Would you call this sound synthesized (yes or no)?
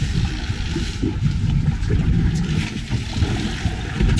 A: yes